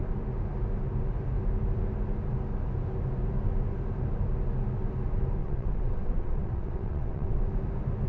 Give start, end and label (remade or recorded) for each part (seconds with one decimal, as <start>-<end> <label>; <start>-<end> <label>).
0.0-5.4 recorded; 5.4-7.4 remade; 7.4-8.1 recorded